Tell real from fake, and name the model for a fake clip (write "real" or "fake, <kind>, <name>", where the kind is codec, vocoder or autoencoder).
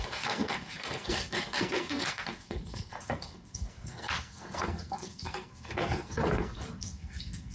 fake, codec, SNAC